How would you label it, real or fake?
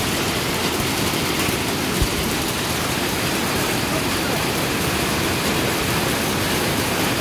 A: real